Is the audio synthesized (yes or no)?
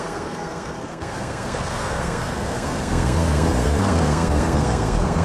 yes